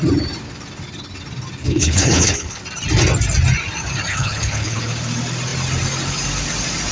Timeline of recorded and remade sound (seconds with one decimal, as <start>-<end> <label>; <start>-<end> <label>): 0.0-1.6 recorded; 1.6-2.6 remade; 2.6-4.1 recorded; 4.1-4.8 remade; 4.8-6.9 recorded